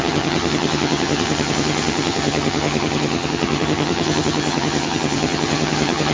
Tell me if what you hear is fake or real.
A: fake